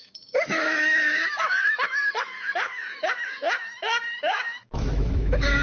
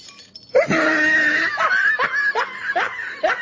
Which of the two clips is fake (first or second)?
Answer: first